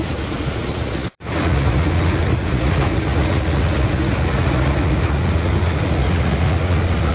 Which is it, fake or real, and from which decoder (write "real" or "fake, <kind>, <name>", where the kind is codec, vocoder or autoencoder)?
fake, vocoder, Vocos